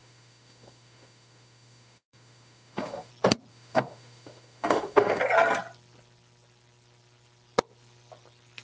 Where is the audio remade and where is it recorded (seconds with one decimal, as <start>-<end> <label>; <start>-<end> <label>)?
0.0-3.1 remade; 3.1-3.5 recorded; 3.5-5.2 remade; 5.2-8.6 recorded